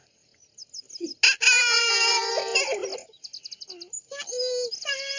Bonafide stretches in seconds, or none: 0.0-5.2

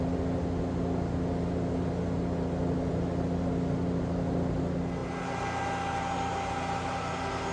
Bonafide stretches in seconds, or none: 0.0-7.5

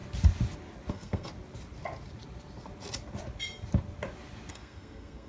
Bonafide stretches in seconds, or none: 0.0-0.9; 1.3-4.5